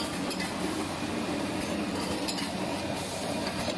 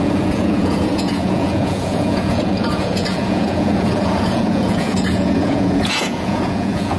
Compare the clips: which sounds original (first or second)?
first